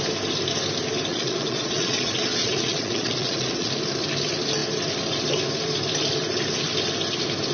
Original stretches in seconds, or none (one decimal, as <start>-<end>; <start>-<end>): 0.0-1.1; 3.7-7.5